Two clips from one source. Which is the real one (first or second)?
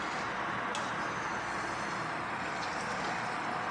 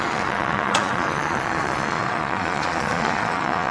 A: first